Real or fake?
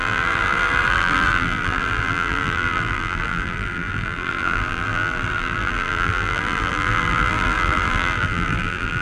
fake